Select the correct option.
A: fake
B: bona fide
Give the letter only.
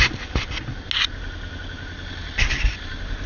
B